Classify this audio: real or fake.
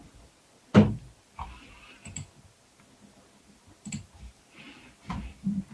real